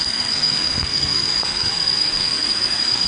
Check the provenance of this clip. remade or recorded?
remade